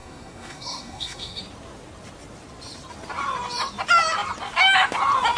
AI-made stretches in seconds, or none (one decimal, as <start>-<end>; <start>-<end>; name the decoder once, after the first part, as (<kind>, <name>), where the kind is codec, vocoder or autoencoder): 0.0-1.4 (codec, SNAC)